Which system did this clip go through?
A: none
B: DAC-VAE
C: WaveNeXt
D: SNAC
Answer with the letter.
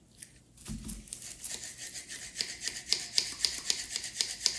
A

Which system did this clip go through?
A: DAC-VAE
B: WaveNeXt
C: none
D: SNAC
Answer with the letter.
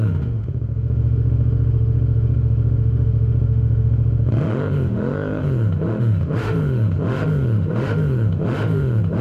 A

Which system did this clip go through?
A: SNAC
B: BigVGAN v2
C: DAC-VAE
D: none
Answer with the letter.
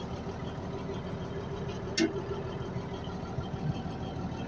D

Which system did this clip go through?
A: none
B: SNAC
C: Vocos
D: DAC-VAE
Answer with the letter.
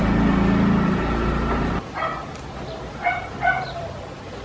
A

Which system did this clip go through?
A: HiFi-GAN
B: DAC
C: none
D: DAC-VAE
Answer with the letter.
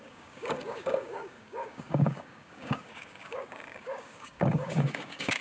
B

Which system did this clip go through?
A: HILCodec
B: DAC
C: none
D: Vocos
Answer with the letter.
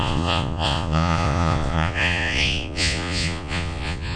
D